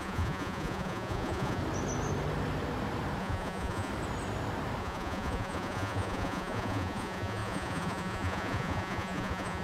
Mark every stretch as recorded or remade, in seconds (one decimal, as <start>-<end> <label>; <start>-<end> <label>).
0.0-1.6 remade; 1.6-3.2 recorded; 3.2-3.9 remade; 3.9-4.8 recorded; 4.8-9.6 remade